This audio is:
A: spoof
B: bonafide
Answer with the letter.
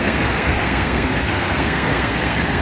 A